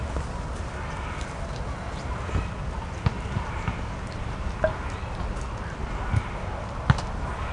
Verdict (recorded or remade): recorded